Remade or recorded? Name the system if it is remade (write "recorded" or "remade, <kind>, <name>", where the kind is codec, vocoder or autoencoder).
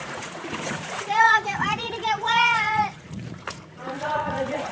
remade, vocoder, Vocos